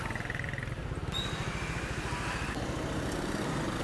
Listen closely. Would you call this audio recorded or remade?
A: recorded